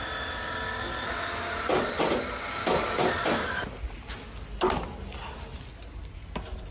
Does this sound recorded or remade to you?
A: recorded